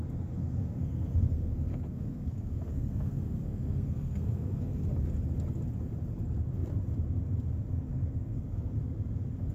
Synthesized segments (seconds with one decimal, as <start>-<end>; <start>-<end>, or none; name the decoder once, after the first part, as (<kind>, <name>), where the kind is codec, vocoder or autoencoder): 0.4-4.8 (codec, SNAC); 7.9-8.7